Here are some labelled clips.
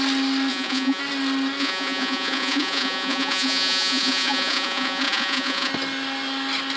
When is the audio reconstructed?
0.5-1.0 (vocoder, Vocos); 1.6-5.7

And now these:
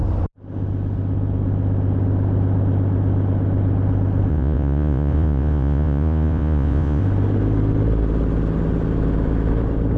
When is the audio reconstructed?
4.3-7.0 (vocoder, Vocos)